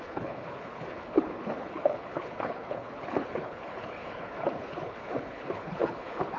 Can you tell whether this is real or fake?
fake